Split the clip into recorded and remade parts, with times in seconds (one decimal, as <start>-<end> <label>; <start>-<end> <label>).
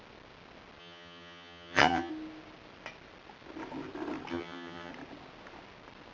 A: 0.0-0.8 recorded; 0.8-2.1 remade; 2.1-4.3 recorded; 4.3-4.9 remade; 4.9-6.1 recorded